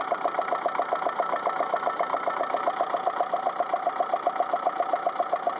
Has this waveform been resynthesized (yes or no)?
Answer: no